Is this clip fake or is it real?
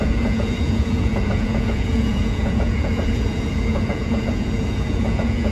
fake